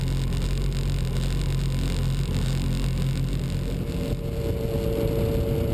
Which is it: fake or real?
real